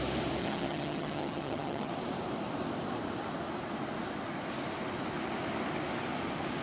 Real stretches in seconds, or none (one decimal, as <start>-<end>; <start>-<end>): 0.0-0.4; 1.9-6.6